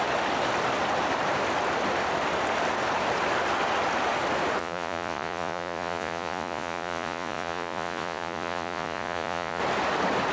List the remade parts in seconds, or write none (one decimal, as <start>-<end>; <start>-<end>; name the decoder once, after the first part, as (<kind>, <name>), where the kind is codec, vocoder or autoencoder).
4.6-9.6 (vocoder, Vocos)